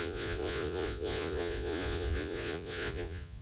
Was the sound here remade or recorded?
remade